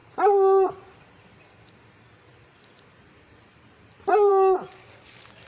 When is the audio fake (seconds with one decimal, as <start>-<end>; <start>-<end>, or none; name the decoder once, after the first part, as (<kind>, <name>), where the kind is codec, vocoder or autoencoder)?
none